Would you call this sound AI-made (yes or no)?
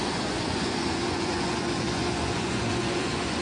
yes